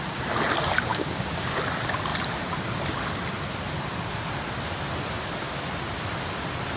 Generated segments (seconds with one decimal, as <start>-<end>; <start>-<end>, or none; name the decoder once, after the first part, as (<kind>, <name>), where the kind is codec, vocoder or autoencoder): 0.9-1.6 (codec, DAC)